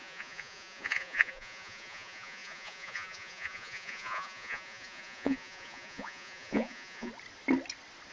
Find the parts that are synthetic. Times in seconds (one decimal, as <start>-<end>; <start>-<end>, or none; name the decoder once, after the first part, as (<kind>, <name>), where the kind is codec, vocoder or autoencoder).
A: 0.0-7.1 (vocoder, Vocos)